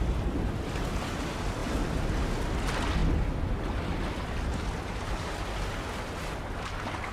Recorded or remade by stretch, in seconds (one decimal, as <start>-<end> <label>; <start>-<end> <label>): 0.0-7.1 recorded